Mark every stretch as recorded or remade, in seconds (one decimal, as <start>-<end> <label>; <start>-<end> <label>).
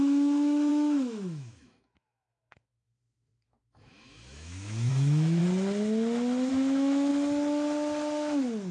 0.0-5.4 remade; 5.4-6.5 recorded; 6.5-7.1 remade; 7.1-8.7 recorded